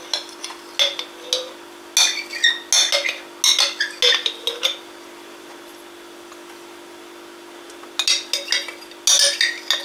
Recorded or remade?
recorded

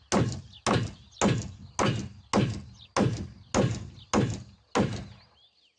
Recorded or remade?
recorded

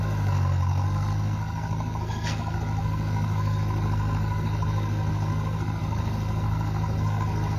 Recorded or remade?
remade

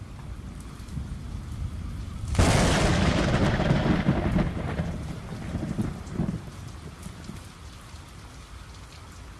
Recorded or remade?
recorded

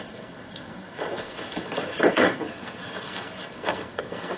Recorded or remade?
remade